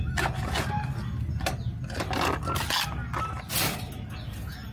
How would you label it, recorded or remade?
recorded